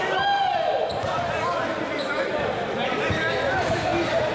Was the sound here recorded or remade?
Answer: recorded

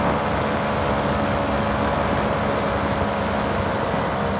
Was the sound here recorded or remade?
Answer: recorded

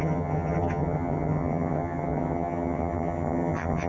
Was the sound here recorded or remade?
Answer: remade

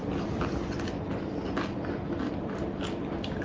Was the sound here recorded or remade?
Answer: recorded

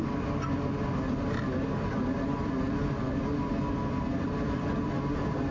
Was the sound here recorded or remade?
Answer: recorded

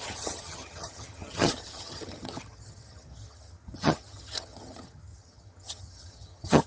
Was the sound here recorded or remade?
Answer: remade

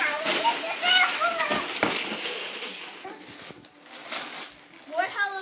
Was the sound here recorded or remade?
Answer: recorded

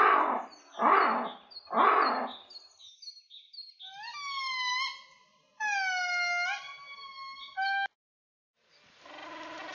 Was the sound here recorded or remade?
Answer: recorded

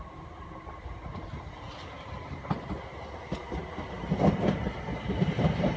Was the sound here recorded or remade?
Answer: recorded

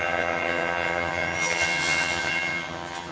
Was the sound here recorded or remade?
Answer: remade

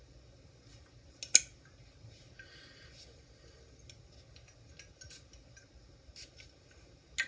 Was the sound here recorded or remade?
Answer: recorded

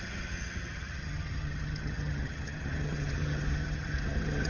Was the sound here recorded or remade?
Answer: remade